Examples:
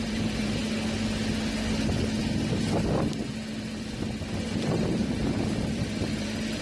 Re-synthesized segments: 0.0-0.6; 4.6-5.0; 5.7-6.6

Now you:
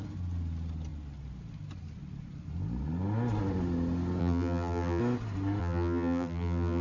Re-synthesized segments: 4.2-5.0; 5.6-6.8

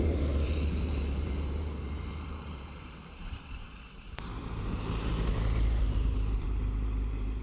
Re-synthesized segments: 0.0-5.1; 5.8-7.4